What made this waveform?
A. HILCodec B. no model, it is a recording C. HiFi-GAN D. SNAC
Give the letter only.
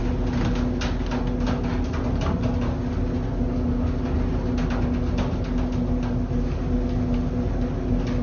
B